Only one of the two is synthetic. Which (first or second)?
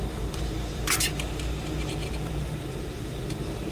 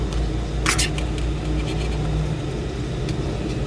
first